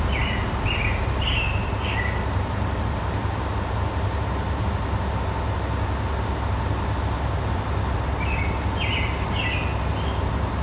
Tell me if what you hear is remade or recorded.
recorded